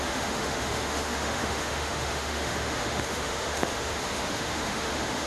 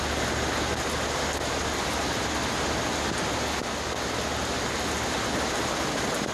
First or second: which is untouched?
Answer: second